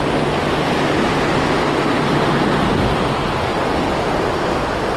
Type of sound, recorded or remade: recorded